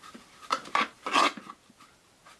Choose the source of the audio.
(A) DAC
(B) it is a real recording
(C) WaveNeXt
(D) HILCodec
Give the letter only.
B